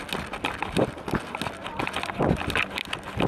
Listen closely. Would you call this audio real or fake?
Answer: real